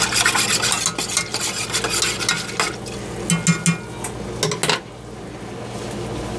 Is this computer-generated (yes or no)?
no